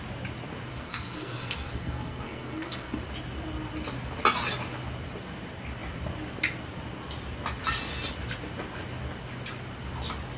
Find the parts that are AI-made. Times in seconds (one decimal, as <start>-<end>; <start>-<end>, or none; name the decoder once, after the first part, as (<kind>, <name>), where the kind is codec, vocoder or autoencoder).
0.7-3.0 (codec, SNAC)